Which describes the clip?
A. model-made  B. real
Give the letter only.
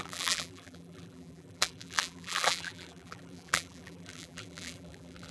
A